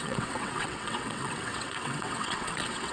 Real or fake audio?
fake